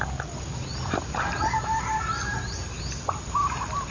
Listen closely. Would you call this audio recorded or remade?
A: recorded